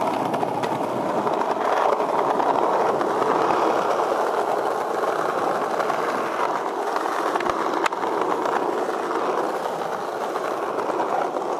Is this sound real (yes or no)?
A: yes